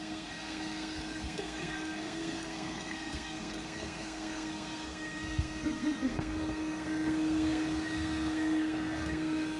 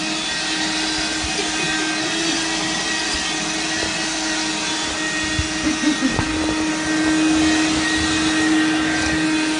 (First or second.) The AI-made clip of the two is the first